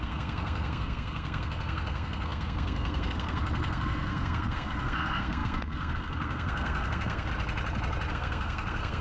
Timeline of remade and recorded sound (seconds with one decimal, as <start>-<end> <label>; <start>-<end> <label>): 0.0-7.3 remade; 7.3-8.1 recorded; 8.1-9.0 remade